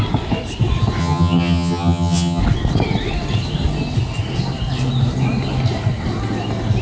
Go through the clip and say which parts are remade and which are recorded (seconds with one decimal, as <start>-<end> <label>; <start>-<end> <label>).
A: 0.0-1.0 recorded; 1.0-2.4 remade; 2.4-6.8 recorded